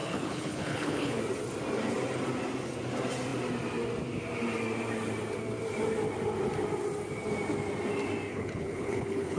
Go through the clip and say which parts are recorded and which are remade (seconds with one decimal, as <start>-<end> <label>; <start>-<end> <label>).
0.0-1.2 remade; 1.2-8.3 recorded; 8.3-9.4 remade